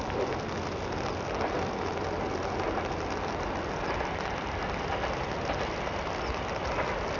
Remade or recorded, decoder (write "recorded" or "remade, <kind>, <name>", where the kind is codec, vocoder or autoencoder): recorded